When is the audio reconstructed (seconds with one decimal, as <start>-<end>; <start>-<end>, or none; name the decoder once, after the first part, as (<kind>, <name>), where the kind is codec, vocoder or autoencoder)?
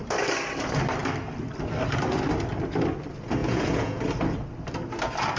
3.4-4.0 (vocoder, Vocos)